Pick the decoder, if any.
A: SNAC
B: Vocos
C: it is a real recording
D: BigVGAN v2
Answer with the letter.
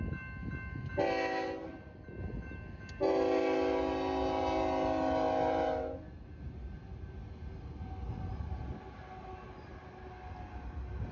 C